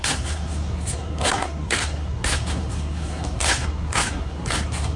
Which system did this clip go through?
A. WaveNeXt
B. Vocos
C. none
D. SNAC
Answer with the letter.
D